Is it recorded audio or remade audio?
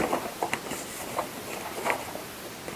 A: recorded